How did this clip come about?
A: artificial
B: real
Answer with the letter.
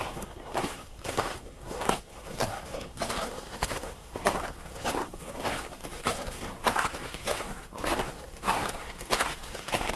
A